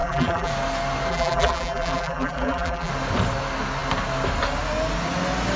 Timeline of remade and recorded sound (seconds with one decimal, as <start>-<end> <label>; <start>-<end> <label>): 0.0-0.5 remade; 0.5-1.1 recorded; 1.1-2.9 remade; 2.9-5.6 recorded